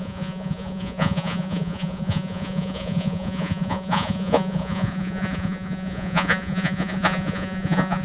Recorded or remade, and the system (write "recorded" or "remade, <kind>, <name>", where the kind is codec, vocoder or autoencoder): remade, vocoder, Vocos